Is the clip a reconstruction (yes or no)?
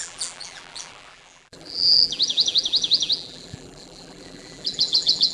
yes